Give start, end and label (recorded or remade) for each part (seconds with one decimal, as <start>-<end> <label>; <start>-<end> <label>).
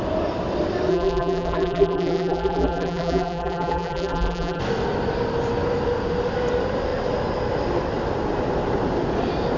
0.0-0.9 recorded; 0.9-4.6 remade; 4.6-9.6 recorded